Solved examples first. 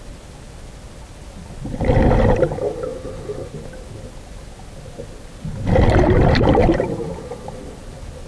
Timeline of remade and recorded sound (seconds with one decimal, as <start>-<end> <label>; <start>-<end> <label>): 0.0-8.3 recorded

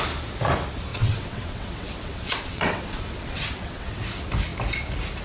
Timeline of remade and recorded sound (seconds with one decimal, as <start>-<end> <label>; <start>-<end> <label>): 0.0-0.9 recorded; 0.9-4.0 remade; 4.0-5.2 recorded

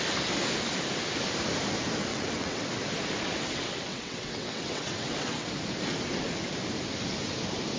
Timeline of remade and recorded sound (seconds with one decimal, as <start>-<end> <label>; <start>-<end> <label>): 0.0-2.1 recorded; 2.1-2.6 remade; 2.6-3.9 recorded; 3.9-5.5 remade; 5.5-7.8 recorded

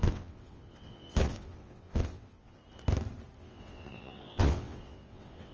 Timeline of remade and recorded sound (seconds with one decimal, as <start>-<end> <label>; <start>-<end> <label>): 0.0-2.6 remade; 2.6-3.4 recorded; 3.4-5.5 remade